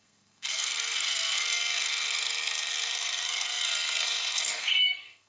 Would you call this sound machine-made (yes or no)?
yes